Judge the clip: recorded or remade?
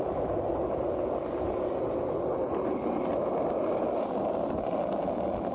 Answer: recorded